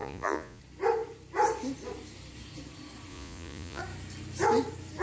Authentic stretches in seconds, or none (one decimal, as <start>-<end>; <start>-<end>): 0.6-3.1; 3.8-5.0